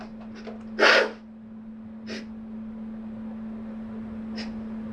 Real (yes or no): yes